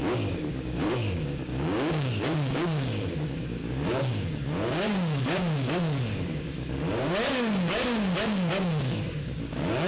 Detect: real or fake fake